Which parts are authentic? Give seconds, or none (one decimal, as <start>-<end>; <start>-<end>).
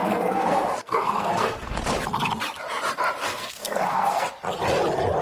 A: 1.8-3.2; 4.3-5.2